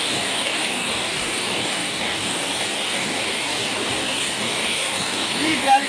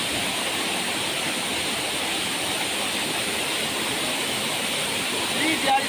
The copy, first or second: first